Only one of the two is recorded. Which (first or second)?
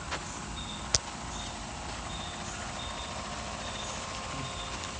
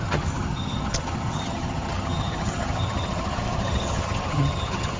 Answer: first